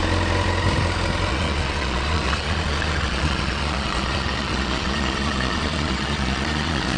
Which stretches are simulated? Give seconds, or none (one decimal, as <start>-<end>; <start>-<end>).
1.3-7.0